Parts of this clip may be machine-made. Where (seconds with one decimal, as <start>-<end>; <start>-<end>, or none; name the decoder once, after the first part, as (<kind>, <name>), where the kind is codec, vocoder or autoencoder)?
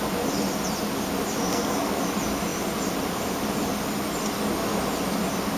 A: 1.5-2.0 (codec, SNAC)